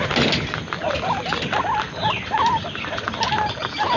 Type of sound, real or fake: real